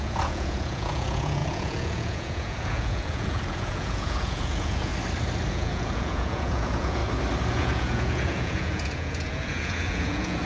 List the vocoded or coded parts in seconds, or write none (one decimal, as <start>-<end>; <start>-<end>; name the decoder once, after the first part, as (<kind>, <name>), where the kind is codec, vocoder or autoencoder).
0.0-4.9 (vocoder, Vocos); 5.5-7.0; 7.5-10.5